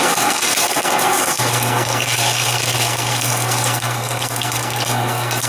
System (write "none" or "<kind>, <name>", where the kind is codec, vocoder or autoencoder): codec, SNAC